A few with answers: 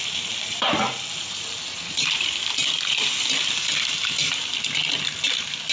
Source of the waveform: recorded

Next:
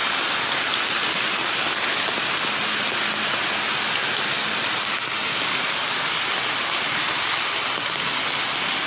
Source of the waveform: recorded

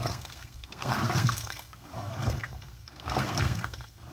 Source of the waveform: remade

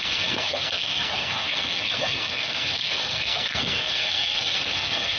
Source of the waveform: remade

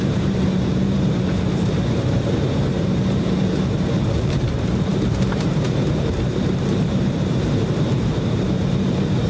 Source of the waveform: remade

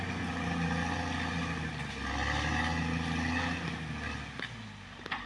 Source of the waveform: recorded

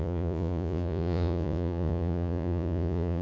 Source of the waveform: remade